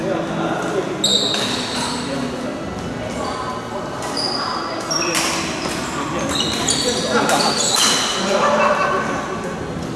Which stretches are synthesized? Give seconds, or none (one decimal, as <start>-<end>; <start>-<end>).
none